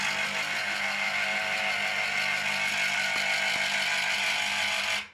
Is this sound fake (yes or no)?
no